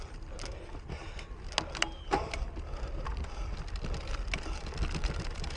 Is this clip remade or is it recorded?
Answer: recorded